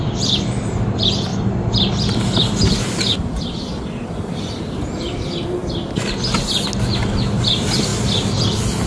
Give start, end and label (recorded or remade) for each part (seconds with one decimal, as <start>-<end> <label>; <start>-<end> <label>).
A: 0.0-5.6 remade; 5.6-7.0 recorded; 7.0-8.9 remade